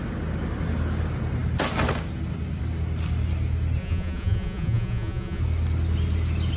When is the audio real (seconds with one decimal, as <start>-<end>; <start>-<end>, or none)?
0.0-3.8; 5.4-6.6